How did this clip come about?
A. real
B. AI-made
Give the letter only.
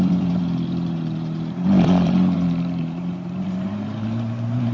B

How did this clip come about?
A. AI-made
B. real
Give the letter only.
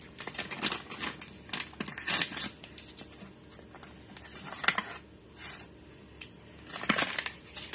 B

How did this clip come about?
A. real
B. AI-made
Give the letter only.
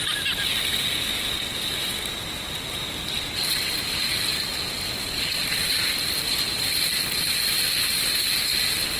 A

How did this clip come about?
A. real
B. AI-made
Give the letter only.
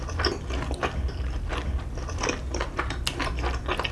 A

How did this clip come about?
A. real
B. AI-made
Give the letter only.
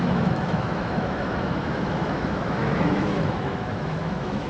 B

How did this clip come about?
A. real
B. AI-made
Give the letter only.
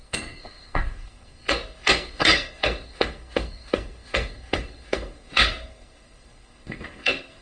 B